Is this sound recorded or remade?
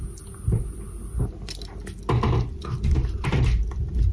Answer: recorded